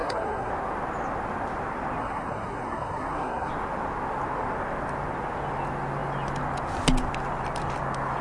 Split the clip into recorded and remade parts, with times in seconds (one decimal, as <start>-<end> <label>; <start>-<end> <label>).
0.0-0.5 remade; 0.5-2.0 recorded; 2.0-3.5 remade; 3.5-8.2 recorded